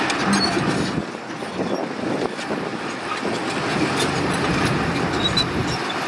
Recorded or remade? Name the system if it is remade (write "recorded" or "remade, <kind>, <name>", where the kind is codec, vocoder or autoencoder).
recorded